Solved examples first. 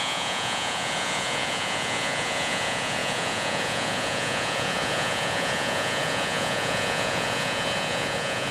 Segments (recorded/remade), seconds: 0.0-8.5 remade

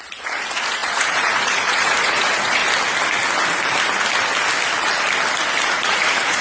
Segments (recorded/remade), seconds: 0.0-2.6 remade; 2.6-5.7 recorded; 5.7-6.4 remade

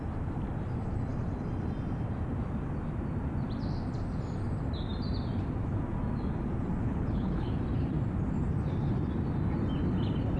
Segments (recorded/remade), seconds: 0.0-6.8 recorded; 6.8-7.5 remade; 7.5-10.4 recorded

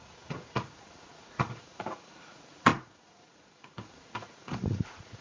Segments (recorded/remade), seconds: 0.0-5.2 remade

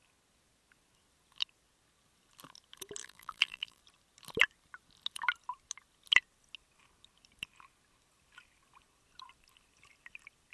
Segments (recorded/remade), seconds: 0.0-3.0 recorded; 3.0-3.8 remade; 3.8-10.5 recorded